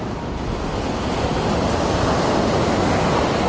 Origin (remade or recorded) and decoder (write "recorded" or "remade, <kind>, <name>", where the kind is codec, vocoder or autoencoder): recorded